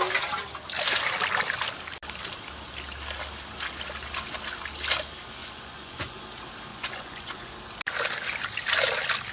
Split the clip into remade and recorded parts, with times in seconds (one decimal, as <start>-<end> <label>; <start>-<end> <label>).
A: 0.0-5.4 recorded; 5.4-6.2 remade; 6.2-6.7 recorded; 6.7-7.5 remade; 7.5-9.3 recorded